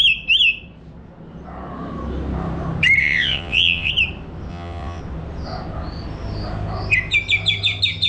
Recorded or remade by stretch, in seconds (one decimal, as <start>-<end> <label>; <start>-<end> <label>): 0.0-3.0 recorded; 3.0-3.9 remade; 3.9-4.5 recorded; 4.5-5.0 remade; 5.0-8.1 recorded